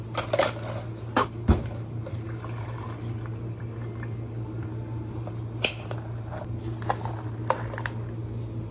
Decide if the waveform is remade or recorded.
recorded